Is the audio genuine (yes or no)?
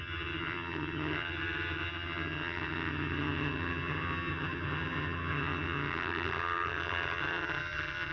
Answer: no